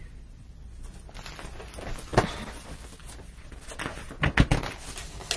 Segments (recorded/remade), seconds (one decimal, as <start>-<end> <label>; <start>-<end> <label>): 0.0-5.4 recorded